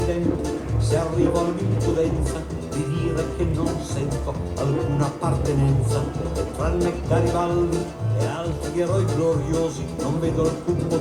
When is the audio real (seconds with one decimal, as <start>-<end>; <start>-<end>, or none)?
0.0-11.0